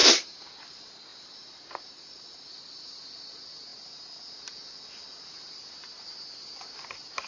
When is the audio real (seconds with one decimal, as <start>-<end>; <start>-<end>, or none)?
0.6-1.1; 3.0-7.3